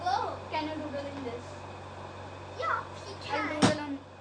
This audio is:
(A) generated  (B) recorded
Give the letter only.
B